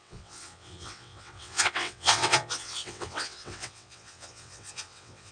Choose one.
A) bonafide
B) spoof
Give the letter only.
B